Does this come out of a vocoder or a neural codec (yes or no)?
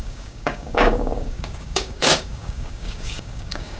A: yes